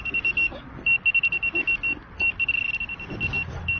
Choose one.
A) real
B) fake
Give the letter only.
A